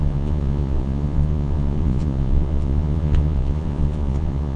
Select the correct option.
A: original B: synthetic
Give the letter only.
B